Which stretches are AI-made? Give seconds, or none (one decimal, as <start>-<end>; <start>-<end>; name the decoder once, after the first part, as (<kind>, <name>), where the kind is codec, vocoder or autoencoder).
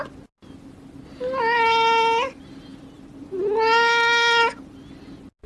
none